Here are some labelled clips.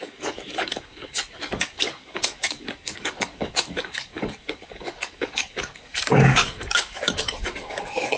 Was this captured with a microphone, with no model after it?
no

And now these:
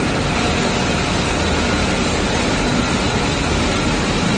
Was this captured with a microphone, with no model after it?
yes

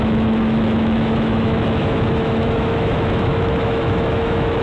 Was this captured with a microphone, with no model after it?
no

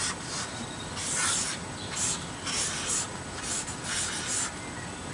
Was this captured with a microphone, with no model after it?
yes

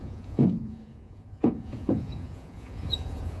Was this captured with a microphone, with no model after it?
no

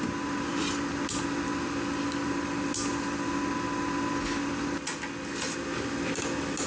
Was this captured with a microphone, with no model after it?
yes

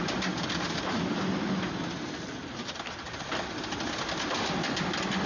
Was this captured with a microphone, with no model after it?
yes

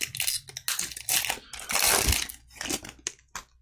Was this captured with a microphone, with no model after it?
yes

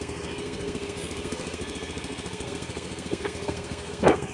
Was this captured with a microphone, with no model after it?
no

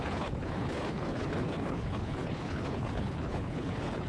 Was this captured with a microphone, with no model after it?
no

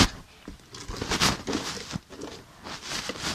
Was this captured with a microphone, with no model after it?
yes